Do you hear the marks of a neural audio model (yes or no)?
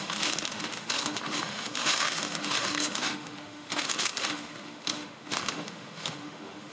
yes